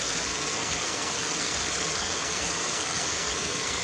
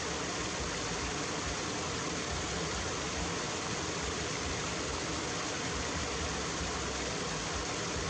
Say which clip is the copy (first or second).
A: first